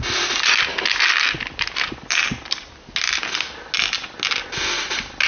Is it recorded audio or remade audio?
recorded